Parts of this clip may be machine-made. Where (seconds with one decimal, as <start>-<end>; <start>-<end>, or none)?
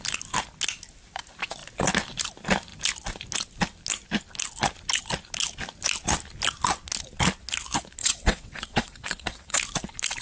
8.0-9.6